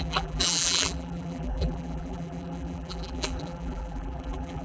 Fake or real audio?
fake